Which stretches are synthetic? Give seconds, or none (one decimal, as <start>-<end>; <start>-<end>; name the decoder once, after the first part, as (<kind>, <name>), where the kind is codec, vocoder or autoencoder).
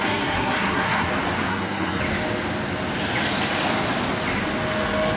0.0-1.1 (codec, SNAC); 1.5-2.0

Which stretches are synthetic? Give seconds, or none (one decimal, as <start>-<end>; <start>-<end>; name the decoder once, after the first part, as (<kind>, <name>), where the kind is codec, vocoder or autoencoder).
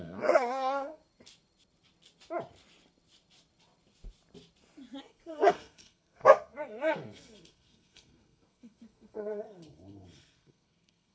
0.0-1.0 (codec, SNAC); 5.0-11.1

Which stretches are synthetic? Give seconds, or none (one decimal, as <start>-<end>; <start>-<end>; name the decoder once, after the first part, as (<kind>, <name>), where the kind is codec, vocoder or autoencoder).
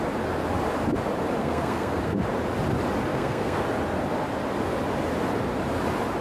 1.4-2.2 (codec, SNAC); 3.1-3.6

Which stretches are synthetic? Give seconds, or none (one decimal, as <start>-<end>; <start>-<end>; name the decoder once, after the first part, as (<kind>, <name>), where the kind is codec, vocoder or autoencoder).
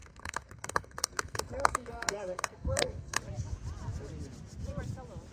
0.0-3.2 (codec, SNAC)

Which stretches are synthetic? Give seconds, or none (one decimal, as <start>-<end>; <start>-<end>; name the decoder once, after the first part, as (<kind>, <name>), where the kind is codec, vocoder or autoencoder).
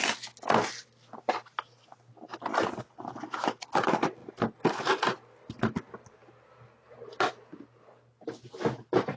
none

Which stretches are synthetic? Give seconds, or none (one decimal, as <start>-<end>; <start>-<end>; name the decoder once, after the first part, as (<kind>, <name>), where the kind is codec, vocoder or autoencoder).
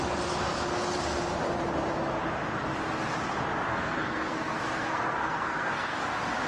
3.7-6.1 (codec, SNAC)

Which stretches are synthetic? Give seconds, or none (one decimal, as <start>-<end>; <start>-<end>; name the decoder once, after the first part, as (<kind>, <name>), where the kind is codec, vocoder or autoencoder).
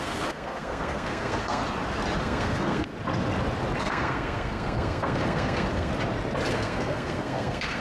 0.0-1.6 (codec, SNAC); 2.2-2.9; 3.8-5.9; 6.5-7.8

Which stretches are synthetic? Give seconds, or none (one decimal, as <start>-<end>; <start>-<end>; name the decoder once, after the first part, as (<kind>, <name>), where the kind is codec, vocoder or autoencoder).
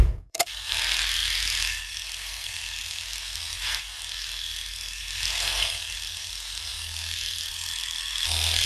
0.0-8.7 (codec, SNAC)